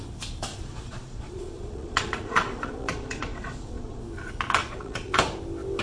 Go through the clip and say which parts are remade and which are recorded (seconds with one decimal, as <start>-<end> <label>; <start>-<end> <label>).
0.0-0.5 recorded; 0.5-4.0 remade; 4.0-4.6 recorded; 4.6-5.1 remade; 5.1-5.8 recorded